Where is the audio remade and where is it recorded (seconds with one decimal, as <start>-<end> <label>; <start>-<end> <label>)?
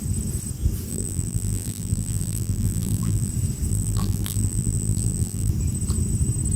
0.0-0.9 recorded; 0.9-3.3 remade; 3.3-3.7 recorded; 3.7-5.5 remade; 5.5-6.6 recorded